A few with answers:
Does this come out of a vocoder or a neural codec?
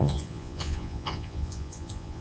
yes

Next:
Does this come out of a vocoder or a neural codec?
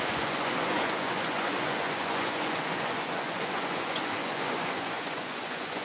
yes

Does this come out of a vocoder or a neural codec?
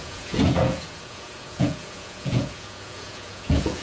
yes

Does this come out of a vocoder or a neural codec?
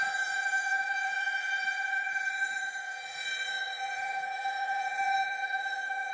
yes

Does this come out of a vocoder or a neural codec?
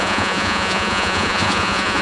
yes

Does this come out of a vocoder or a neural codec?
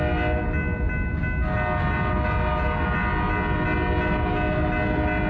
no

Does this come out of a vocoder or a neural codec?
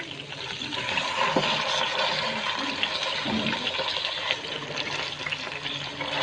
no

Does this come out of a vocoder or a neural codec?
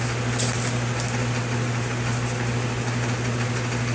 no